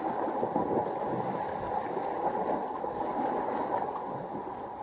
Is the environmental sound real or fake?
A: real